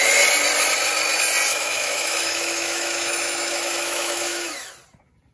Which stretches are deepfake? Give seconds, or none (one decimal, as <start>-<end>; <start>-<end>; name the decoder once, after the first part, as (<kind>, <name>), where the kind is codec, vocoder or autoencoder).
1.5-4.7 (autoencoder, DAC-VAE)